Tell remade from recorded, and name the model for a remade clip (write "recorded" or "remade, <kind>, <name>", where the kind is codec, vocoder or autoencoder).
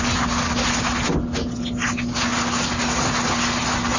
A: recorded